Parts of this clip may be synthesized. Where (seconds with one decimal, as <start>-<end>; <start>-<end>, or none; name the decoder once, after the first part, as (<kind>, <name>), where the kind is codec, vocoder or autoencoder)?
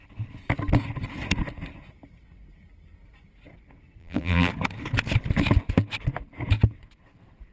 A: 4.0-4.5 (vocoder, BigVGAN v2)